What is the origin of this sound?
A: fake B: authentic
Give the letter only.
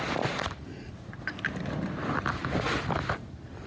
B